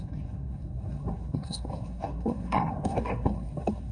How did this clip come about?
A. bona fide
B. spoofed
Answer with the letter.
B